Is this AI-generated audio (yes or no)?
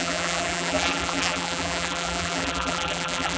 yes